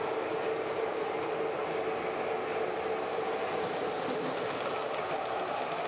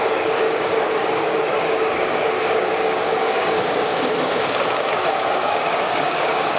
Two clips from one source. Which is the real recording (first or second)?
first